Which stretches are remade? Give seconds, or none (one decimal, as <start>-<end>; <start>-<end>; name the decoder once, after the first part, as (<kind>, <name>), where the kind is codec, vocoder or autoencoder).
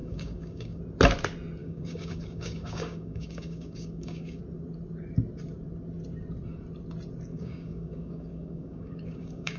0.0-0.8 (codec, DAC); 1.6-4.4; 7.3-9.6